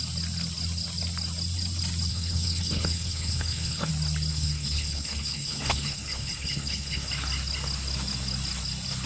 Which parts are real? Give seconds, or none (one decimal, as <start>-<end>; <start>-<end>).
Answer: 0.0-2.1; 3.9-4.3; 7.1-9.1